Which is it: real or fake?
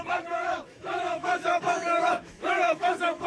fake